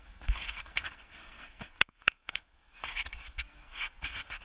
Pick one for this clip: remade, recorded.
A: remade